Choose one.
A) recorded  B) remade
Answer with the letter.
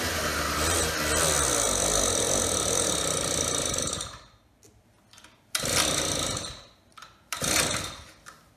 A